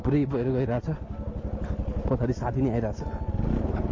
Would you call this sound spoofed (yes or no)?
no